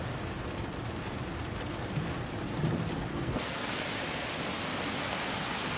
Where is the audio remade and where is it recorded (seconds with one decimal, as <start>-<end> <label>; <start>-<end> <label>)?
0.0-3.1 recorded; 3.1-3.7 remade; 3.7-5.8 recorded